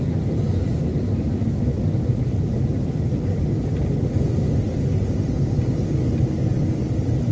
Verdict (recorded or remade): recorded